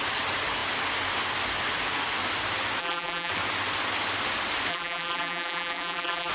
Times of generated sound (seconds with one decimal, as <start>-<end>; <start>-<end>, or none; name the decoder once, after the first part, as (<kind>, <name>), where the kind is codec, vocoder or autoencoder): 2.8-3.3 (vocoder, BigVGAN v2); 4.7-6.3